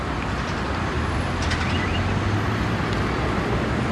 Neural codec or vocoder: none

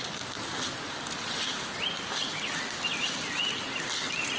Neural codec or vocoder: none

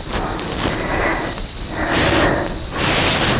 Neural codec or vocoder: none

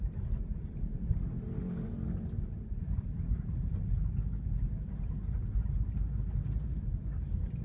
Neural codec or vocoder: vocoder, BigVGAN v2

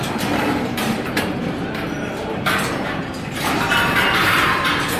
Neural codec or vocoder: vocoder, BigVGAN v2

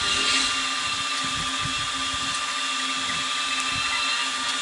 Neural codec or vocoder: none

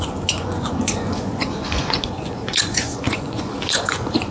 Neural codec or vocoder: vocoder, Vocos